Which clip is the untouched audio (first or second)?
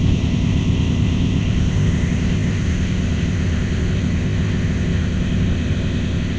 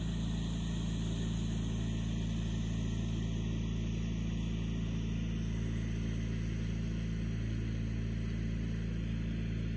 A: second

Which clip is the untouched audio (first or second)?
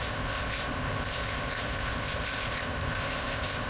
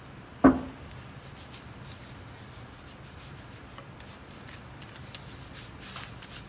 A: second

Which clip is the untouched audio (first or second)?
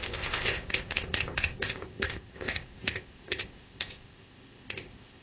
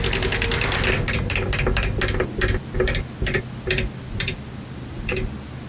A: second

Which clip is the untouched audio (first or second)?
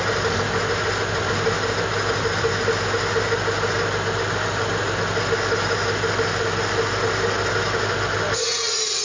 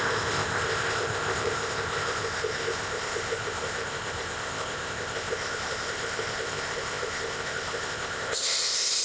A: first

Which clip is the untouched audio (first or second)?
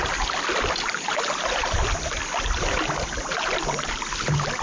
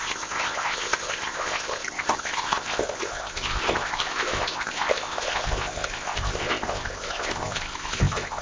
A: first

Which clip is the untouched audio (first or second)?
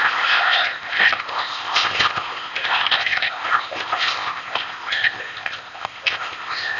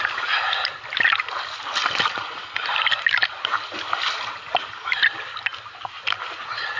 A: second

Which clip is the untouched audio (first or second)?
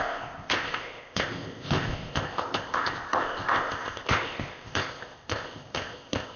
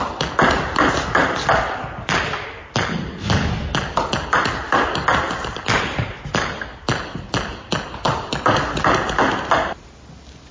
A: second